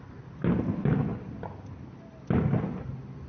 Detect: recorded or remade recorded